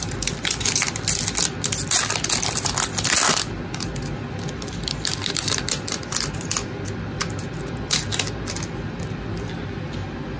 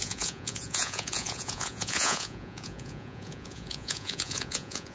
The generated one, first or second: second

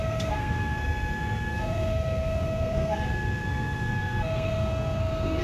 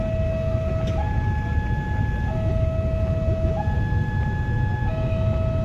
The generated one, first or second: first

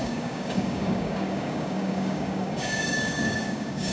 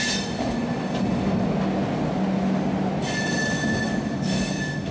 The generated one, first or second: first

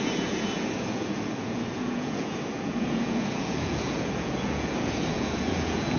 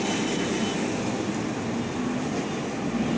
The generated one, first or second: first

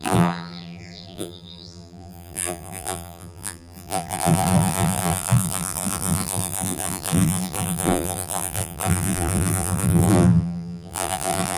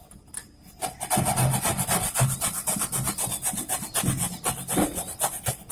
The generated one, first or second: first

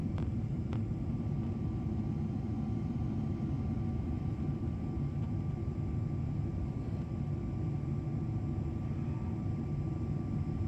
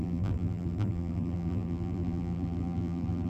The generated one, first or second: second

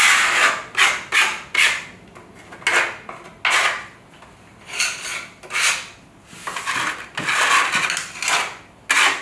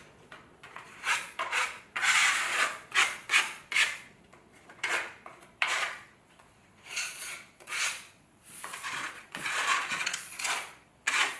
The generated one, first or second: second